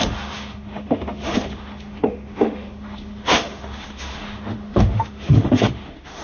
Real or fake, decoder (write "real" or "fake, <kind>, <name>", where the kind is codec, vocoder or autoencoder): fake, autoencoder, DAC-VAE